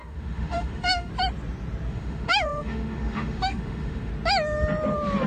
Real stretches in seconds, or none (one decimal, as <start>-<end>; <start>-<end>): 1.1-1.9; 4.1-5.3